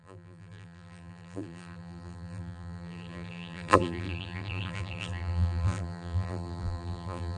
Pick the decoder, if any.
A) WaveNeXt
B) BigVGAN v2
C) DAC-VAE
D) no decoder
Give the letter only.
B